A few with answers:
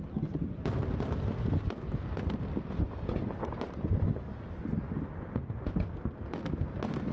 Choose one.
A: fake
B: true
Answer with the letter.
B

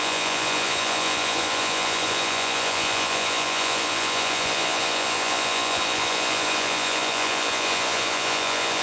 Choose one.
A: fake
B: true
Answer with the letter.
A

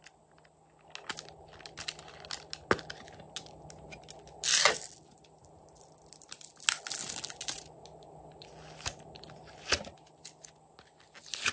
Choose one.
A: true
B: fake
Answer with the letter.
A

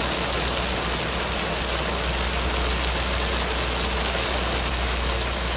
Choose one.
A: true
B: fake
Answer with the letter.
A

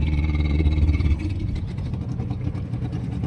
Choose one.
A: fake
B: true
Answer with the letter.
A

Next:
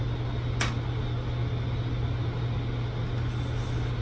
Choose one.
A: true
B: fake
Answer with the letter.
A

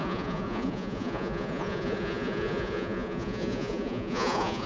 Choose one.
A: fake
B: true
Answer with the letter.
A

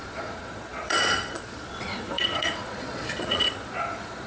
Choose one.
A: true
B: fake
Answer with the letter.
B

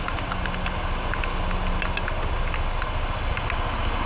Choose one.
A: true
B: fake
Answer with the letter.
A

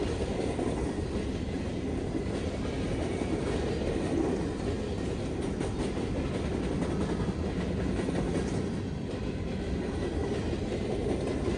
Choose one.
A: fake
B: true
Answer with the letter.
B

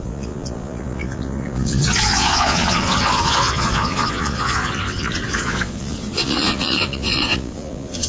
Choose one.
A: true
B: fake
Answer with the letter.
B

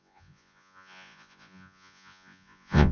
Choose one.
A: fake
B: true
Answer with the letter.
A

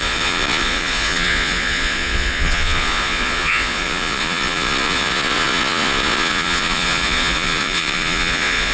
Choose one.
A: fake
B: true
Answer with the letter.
A